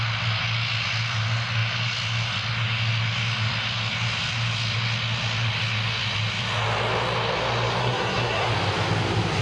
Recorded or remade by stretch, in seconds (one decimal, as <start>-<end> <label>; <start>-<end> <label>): 0.0-7.8 recorded; 7.8-8.5 remade; 8.5-9.4 recorded